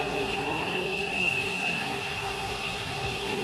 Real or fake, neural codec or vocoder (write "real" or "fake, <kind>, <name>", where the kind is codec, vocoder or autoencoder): fake, codec, SNAC